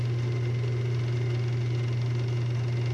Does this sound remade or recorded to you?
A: recorded